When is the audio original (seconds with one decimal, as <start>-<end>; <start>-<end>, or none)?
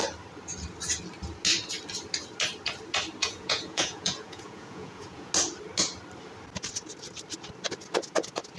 0.0-3.2; 5.3-8.6